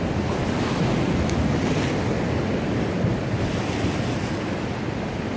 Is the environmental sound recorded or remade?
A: recorded